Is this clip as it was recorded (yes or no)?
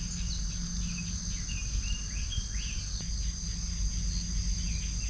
yes